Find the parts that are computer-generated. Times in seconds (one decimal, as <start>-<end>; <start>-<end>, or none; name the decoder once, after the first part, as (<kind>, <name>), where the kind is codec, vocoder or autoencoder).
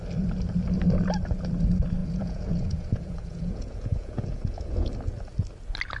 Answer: 2.0-4.9 (vocoder, Vocos)